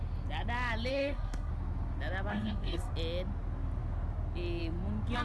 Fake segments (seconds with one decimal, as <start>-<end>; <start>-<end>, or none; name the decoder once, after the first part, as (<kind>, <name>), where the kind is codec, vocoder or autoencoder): 0.9-1.5 (codec, SNAC); 2.3-2.9